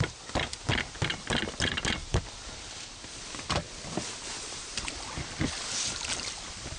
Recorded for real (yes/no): yes